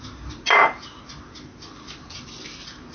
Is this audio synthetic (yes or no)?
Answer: no